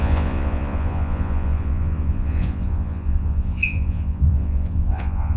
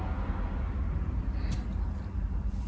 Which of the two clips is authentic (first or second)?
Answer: second